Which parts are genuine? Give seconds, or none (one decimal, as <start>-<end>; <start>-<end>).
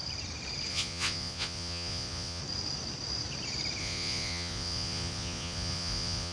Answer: 0.0-0.7; 2.4-3.8